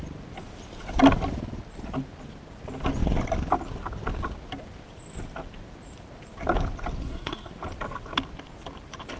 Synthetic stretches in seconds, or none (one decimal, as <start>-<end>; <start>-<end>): 7.0-7.5